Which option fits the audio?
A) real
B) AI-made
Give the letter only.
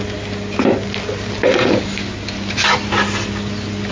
A